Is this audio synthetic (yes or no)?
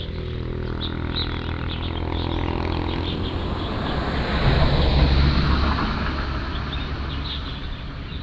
no